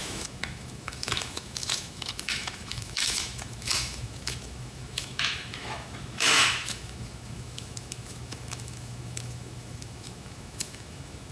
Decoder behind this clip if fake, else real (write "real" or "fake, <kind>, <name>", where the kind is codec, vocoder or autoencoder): fake, autoencoder, DAC-VAE